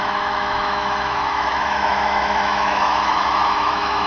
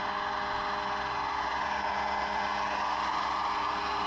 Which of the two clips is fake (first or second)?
first